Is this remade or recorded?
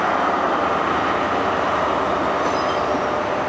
recorded